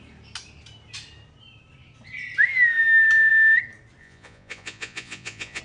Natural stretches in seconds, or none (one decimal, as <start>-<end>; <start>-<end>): 0.0-4.0